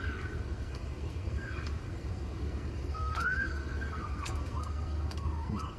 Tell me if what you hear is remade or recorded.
remade